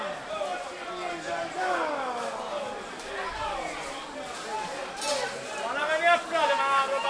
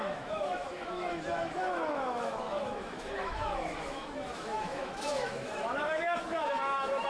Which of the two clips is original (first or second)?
first